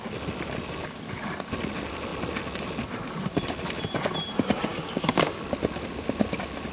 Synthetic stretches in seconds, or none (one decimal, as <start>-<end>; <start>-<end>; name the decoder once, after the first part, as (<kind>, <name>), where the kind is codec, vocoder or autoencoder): 4.7-5.4 (codec, DAC)